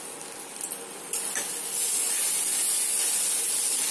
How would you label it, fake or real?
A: real